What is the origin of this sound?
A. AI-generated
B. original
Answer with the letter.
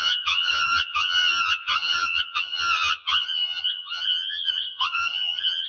A